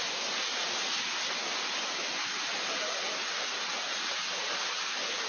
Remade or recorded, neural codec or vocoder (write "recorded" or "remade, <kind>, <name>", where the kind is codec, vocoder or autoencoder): recorded